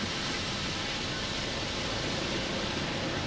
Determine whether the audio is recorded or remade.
recorded